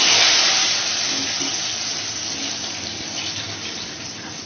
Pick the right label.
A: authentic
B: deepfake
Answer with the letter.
A